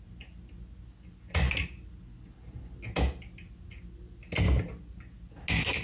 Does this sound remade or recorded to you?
recorded